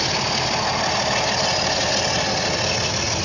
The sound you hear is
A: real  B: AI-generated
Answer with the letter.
A